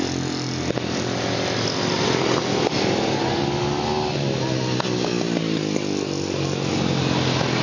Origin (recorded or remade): recorded